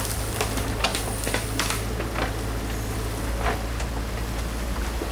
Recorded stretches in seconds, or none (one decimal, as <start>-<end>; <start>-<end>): 0.0-5.1